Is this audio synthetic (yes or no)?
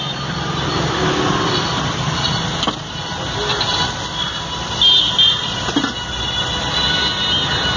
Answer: no